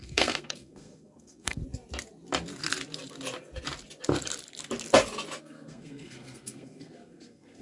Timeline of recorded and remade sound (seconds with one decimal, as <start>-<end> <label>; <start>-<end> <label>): 0.0-1.6 remade; 1.6-5.4 recorded; 5.4-7.6 remade